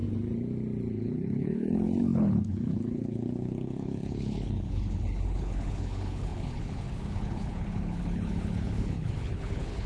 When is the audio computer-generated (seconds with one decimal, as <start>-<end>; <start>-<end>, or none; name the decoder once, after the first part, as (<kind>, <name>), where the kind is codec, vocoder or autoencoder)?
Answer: 0.9-9.9 (codec, HILCodec)